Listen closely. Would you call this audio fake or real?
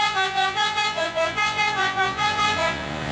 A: fake